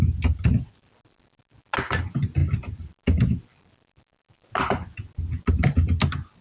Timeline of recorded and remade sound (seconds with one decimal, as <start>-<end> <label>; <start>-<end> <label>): 0.0-6.4 recorded